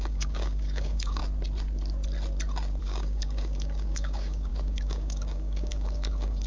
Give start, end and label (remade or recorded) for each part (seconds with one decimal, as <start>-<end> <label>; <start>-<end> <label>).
0.0-1.2 remade; 1.2-2.8 recorded; 2.8-6.5 remade